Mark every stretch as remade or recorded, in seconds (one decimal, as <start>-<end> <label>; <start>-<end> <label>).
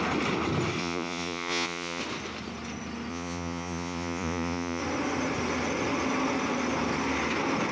0.0-0.8 recorded; 0.8-2.0 remade; 2.0-3.1 recorded; 3.1-4.8 remade; 4.8-7.7 recorded